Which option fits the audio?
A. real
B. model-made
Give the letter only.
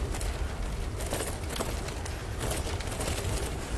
A